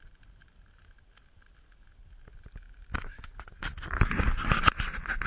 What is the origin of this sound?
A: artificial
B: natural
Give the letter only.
B